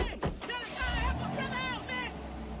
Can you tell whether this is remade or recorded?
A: recorded